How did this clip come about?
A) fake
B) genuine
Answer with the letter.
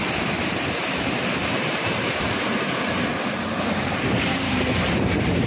A